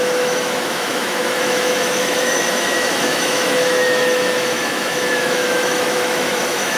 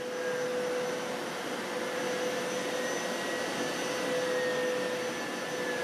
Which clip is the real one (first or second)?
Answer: second